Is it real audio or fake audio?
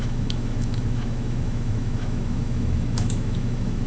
fake